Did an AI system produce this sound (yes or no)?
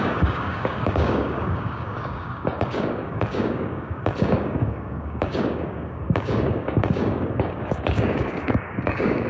yes